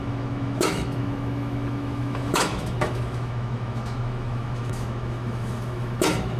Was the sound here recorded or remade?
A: remade